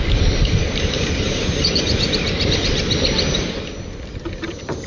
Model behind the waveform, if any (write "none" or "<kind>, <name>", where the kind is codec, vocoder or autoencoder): none